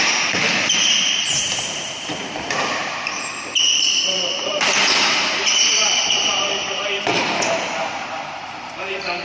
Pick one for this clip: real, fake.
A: fake